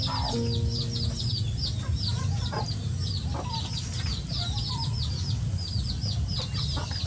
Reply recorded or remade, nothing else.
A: recorded